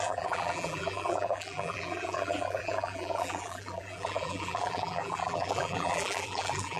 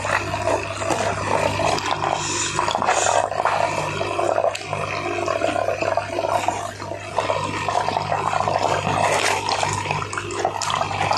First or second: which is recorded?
second